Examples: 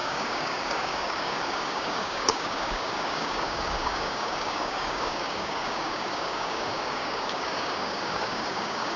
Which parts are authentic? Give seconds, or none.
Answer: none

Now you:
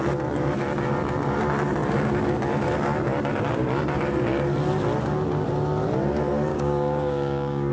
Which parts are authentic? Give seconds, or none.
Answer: 0.0-6.5

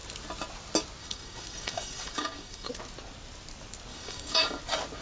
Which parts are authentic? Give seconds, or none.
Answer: 0.0-1.0; 2.7-3.9; 4.6-5.0

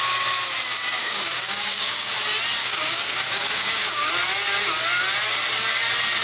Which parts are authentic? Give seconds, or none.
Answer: 0.0-1.0; 2.1-2.6; 4.1-6.2

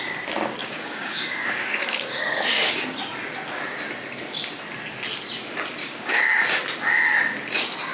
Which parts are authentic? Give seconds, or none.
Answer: 0.0-0.6; 2.8-5.8; 6.6-7.9

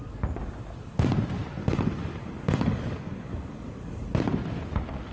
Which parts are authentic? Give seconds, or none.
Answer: 0.0-1.6; 4.1-5.1

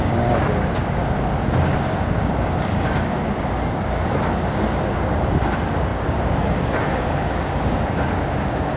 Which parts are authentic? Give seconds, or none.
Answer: none

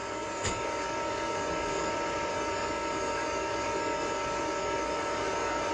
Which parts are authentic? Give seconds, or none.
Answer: 1.9-2.3